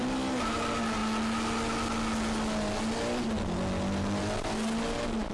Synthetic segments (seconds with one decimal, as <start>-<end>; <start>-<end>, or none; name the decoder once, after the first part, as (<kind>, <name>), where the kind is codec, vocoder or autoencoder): none